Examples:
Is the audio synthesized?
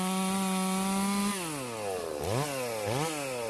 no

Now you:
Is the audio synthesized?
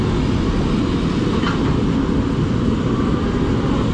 no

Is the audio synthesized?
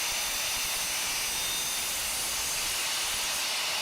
no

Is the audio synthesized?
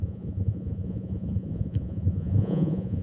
yes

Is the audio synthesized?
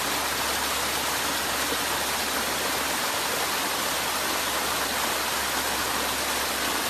no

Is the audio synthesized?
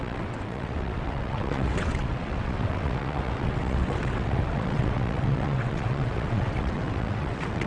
yes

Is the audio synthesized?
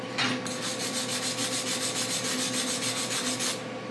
no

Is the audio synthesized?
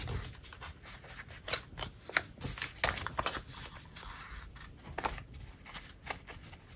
no